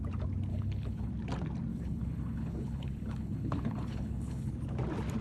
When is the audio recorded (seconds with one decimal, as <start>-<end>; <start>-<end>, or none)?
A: 0.0-0.5; 1.1-1.7; 4.5-5.2